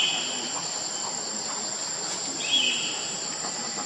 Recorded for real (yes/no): yes